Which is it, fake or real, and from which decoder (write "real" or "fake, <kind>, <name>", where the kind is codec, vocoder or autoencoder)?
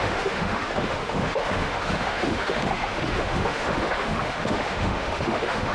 fake, autoencoder, DAC-VAE